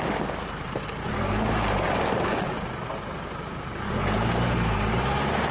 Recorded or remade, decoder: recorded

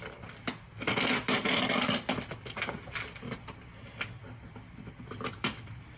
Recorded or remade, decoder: recorded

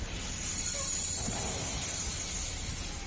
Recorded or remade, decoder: recorded